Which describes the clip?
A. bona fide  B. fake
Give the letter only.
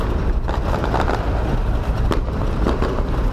A